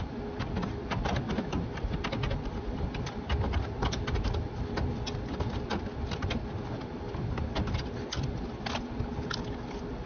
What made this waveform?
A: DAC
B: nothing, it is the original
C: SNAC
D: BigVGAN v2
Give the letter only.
B